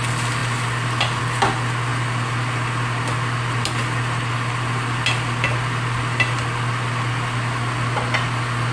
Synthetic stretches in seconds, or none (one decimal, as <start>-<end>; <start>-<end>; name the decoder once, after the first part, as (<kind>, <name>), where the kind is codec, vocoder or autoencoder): none